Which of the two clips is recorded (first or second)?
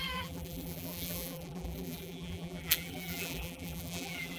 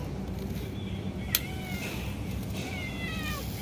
second